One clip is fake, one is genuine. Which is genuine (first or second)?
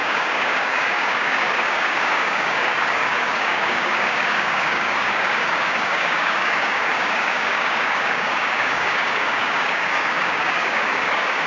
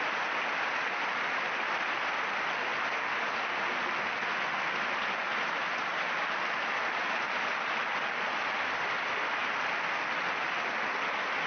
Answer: second